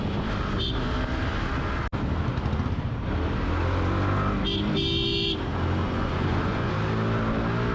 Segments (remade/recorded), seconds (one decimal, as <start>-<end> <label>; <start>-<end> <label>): 0.0-5.8 recorded; 5.8-6.7 remade; 6.7-7.7 recorded